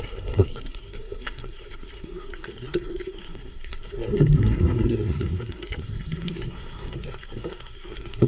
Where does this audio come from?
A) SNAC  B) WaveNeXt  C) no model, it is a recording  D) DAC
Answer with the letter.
A